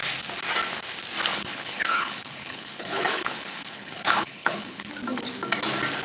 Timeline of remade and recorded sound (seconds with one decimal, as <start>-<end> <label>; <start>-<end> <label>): 0.0-1.3 recorded; 1.3-4.9 remade; 4.9-6.0 recorded